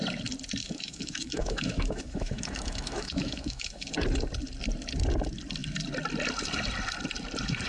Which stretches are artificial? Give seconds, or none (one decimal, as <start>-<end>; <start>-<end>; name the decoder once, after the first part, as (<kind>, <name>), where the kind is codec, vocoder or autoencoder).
0.6-3.9 (autoencoder, DAC-VAE)